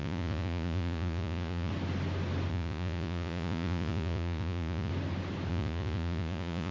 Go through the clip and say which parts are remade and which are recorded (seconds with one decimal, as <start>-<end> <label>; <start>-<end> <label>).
0.0-1.7 remade; 1.7-2.5 recorded; 2.5-4.9 remade; 4.9-5.5 recorded; 5.5-6.7 remade